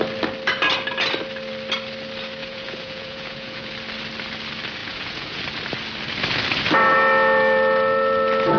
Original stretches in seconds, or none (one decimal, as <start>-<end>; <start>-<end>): 0.0-2.4; 3.7-4.8; 5.4-8.6